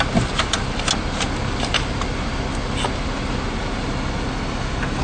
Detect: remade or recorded recorded